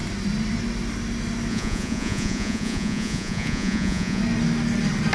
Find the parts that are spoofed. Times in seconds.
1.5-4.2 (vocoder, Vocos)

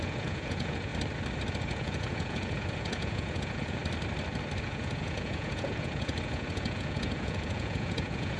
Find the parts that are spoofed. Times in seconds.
0.0-0.9 (vocoder, Vocos); 1.5-3.8; 4.6-8.4

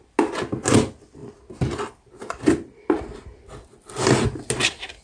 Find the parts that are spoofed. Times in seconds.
none

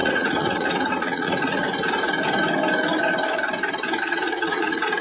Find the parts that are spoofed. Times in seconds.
0.0-1.6 (vocoder, Vocos); 4.0-5.0

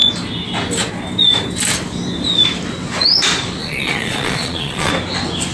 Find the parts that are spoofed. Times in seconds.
3.6-4.9 (vocoder, Vocos)

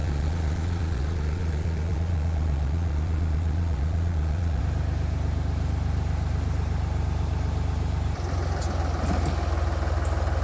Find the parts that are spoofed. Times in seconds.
0.0-4.6 (vocoder, Vocos)

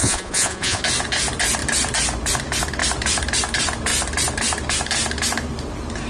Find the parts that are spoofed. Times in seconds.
0.0-0.8 (vocoder, Vocos)

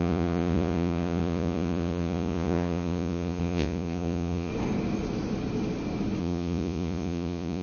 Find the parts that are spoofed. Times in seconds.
0.0-4.5 (vocoder, Vocos); 6.2-7.6